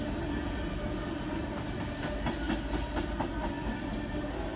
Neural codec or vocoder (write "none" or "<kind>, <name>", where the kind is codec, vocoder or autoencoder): none